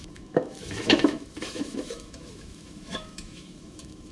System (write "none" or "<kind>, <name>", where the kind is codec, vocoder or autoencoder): autoencoder, DAC-VAE